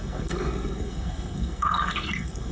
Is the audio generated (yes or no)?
yes